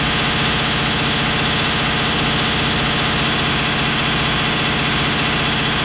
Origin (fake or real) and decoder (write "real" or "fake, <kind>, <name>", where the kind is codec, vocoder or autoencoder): fake, codec, DAC